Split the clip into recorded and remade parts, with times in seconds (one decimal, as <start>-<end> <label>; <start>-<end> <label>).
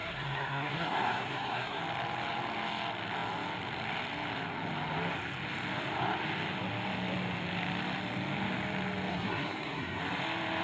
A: 0.0-1.8 remade; 1.8-9.1 recorded; 9.1-10.0 remade; 10.0-10.6 recorded